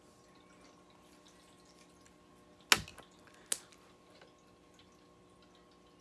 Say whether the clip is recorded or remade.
recorded